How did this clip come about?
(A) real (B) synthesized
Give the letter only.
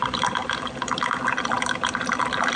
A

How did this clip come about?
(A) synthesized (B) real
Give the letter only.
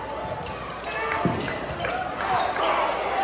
B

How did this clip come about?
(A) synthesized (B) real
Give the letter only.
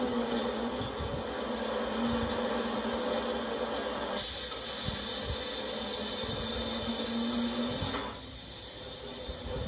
B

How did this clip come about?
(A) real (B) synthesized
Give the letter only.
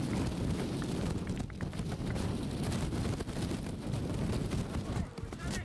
B